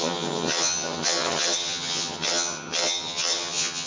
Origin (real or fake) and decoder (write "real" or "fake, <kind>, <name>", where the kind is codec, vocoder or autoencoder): fake, vocoder, HiFi-GAN